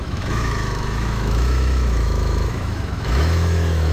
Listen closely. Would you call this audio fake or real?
fake